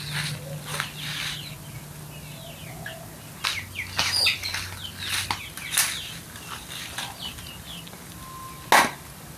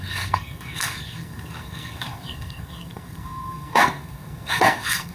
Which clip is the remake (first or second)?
second